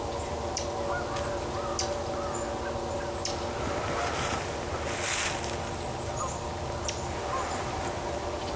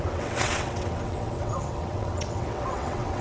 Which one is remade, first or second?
second